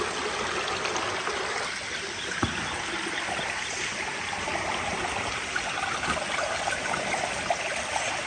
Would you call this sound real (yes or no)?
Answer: yes